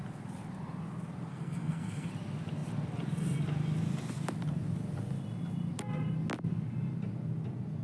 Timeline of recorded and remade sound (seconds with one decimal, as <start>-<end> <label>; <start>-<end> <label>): 0.0-1.3 recorded; 1.3-2.1 remade; 2.1-7.8 recorded